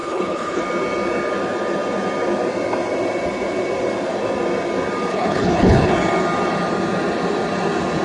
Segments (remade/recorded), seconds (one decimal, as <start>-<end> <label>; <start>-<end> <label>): 0.0-0.6 remade; 0.6-5.1 recorded; 5.1-5.9 remade; 5.9-8.0 recorded